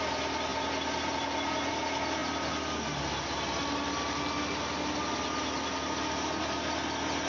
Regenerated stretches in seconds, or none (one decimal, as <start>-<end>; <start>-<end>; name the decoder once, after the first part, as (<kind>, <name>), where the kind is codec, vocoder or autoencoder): none